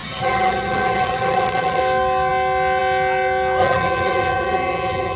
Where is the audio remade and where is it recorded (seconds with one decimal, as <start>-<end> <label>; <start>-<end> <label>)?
0.0-1.8 remade; 1.8-3.6 recorded; 3.6-5.2 remade